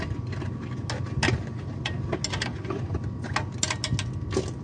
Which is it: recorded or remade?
recorded